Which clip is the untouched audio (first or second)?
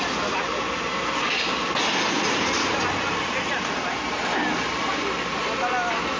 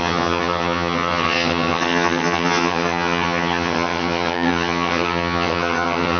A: first